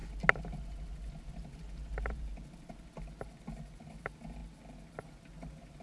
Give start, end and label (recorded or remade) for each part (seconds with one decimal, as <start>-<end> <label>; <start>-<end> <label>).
0.0-5.8 recorded